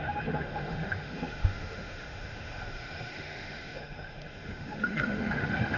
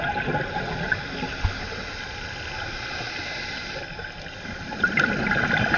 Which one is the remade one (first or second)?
first